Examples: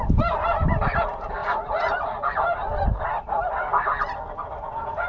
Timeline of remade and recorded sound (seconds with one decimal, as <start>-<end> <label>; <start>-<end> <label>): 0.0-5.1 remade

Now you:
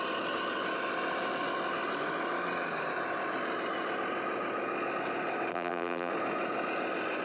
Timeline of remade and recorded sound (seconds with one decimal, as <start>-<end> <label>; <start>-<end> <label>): 0.0-5.5 recorded; 5.5-6.1 remade; 6.1-7.2 recorded

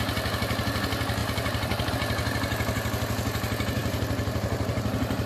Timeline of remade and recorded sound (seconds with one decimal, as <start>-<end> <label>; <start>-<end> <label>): 0.0-1.2 recorded; 1.2-1.9 remade; 1.9-3.8 recorded; 3.8-5.3 remade

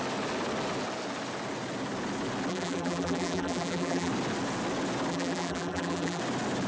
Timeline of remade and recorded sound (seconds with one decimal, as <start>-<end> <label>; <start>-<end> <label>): 0.0-2.5 recorded; 2.5-4.1 remade; 4.1-5.1 recorded; 5.1-6.2 remade; 6.2-6.7 recorded